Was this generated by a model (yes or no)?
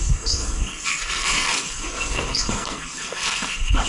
yes